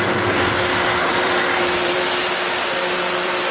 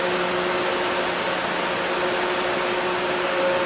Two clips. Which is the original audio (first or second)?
second